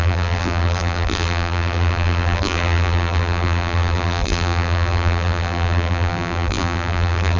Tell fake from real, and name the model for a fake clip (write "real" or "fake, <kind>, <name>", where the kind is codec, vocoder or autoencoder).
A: fake, vocoder, BigVGAN v2